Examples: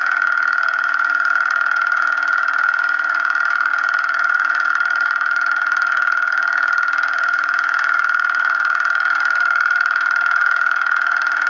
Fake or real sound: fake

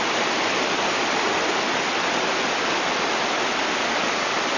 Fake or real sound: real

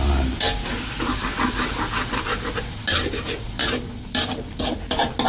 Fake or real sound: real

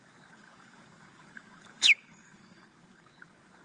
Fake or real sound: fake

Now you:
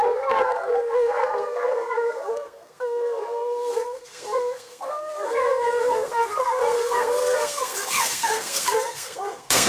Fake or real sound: fake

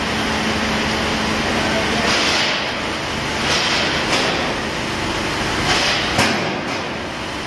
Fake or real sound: real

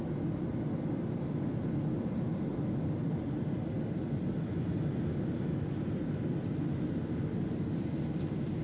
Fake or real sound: real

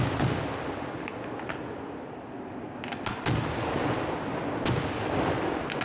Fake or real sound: real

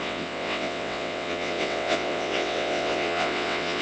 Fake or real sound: fake